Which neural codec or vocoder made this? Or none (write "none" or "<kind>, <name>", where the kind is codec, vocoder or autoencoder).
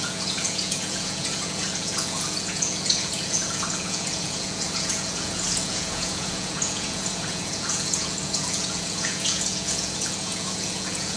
vocoder, Vocos